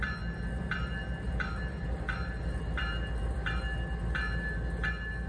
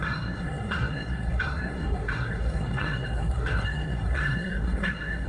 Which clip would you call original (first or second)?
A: first